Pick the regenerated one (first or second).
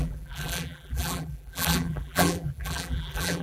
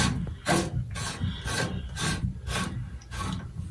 first